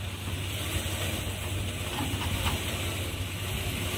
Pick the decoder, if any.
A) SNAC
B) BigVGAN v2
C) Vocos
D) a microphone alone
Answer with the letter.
D